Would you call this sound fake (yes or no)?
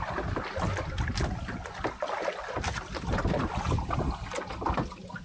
no